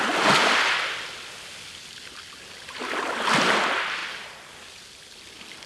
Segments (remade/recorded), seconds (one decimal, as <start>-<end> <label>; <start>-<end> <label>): 0.0-5.7 recorded